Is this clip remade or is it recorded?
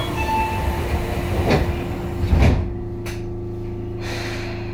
recorded